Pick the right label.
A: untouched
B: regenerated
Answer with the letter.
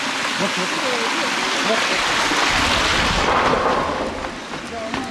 A